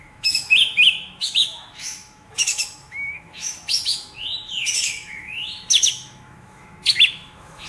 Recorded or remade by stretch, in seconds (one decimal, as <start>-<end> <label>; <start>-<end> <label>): 0.0-7.7 remade